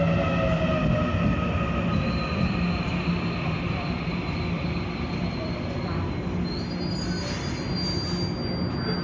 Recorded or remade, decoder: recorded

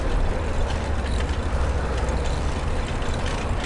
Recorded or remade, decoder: recorded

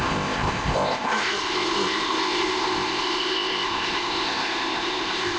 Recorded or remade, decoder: remade, codec, ZipCodec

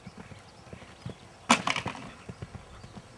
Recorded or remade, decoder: recorded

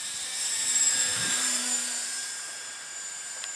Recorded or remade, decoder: remade, vocoder, BigVGAN v2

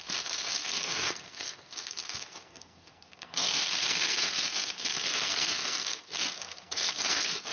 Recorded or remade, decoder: remade, codec, SNAC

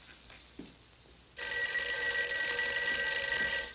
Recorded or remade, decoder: recorded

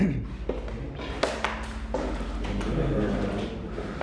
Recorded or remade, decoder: recorded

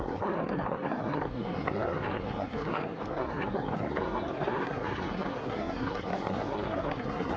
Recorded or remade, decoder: remade, codec, SNAC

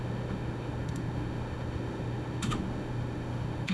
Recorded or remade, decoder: remade, autoencoder, DAC-VAE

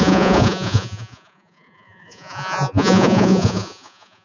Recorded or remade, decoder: remade, vocoder, Vocos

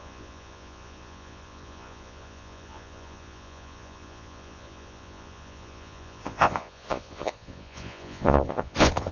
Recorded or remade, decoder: remade, vocoder, Vocos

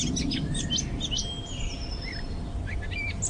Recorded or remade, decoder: recorded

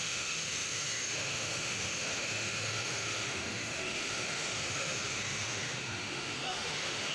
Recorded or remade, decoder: remade, autoencoder, DAC-VAE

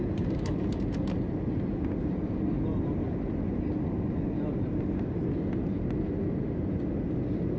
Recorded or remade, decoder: recorded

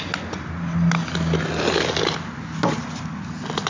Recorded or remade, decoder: recorded